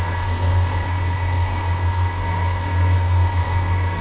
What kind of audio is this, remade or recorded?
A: remade